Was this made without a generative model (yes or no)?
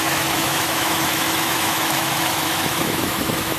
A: no